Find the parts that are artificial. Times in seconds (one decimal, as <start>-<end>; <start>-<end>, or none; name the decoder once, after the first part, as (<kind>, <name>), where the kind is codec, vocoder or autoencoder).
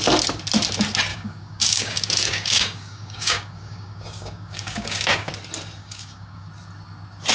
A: 1.1-5.3 (codec, DAC); 5.8-6.5